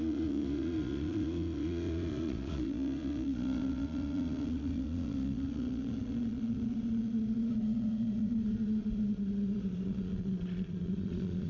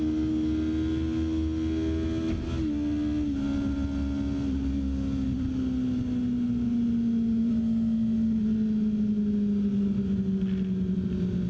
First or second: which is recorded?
second